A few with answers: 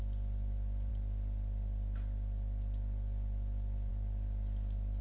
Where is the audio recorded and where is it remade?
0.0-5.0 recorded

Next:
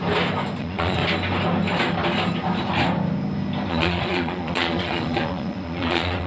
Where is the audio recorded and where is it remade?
0.0-0.6 recorded; 0.6-1.0 remade; 1.0-3.7 recorded; 3.7-6.3 remade

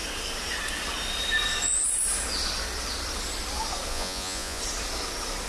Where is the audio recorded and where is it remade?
0.0-3.9 recorded; 3.9-4.6 remade; 4.6-5.5 recorded

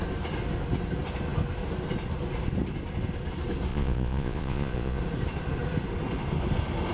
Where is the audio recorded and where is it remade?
0.0-3.7 recorded; 3.7-5.0 remade; 5.0-6.9 recorded

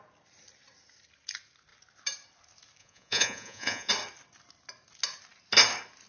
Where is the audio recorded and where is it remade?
0.0-2.8 recorded; 2.8-3.9 remade; 3.9-6.1 recorded

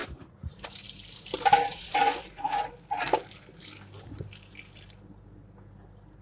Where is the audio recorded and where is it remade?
0.0-0.5 remade; 0.5-1.7 recorded; 1.7-2.7 remade; 2.7-6.2 recorded

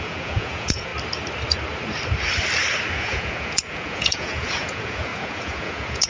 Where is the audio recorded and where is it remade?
0.0-0.9 remade; 0.9-2.9 recorded; 2.9-6.1 remade

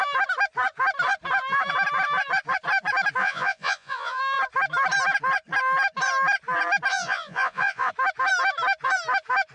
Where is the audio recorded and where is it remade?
0.0-3.2 recorded; 3.2-4.2 remade; 4.2-6.9 recorded; 6.9-7.9 remade; 7.9-9.5 recorded